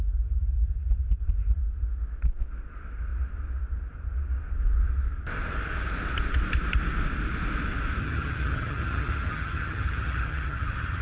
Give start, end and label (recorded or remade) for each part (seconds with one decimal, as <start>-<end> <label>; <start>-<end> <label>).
0.0-8.0 recorded; 8.0-11.0 remade